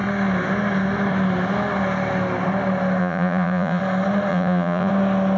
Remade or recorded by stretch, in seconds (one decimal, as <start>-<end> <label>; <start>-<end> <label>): 0.0-3.0 recorded; 3.0-3.8 remade; 3.8-4.3 recorded; 4.3-4.9 remade; 4.9-5.4 recorded